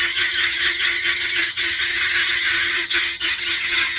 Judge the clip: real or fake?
fake